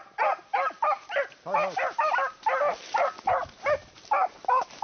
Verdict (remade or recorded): recorded